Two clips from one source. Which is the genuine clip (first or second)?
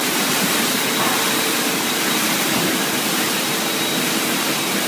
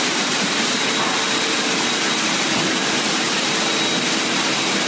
second